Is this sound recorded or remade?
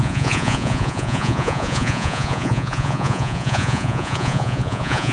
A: remade